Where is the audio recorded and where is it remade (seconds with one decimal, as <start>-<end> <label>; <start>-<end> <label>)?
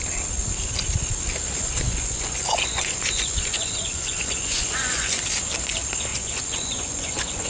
0.0-1.6 recorded; 1.6-5.2 remade; 5.2-6.1 recorded; 6.1-7.5 remade